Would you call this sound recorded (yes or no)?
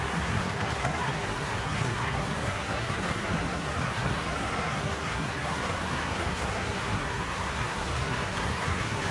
no